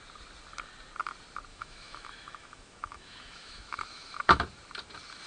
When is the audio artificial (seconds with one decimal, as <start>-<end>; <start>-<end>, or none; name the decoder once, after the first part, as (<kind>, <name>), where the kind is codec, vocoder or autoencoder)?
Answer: 1.5-4.4 (autoencoder, DAC-VAE)